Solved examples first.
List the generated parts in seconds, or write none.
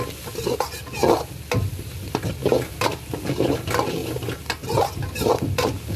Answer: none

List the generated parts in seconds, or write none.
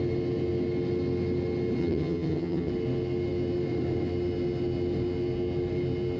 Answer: 1.8-2.7 (vocoder, HiFi-GAN)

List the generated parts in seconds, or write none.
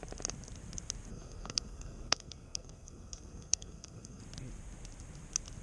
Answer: 1.1-4.2 (codec, SNAC)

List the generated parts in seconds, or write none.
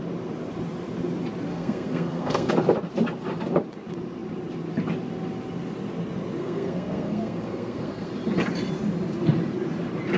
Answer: 1.5-2.5 (codec, SNAC); 6.4-8.1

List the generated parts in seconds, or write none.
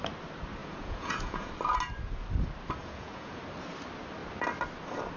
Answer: 0.6-1.5 (vocoder, Vocos); 2.8-3.4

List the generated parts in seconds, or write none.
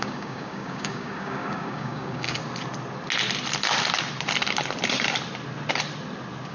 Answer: 0.0-2.4 (codec, DAC)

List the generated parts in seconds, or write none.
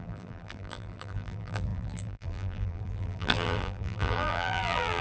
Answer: 0.0-5.0 (vocoder, BigVGAN v2)